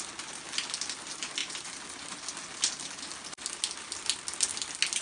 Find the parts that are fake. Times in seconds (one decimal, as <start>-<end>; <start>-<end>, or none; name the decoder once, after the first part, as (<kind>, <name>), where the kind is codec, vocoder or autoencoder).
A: none